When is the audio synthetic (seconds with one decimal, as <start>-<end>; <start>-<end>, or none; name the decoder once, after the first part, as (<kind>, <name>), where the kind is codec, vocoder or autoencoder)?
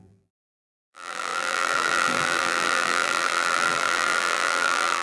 0.0-5.0 (vocoder, BigVGAN v2)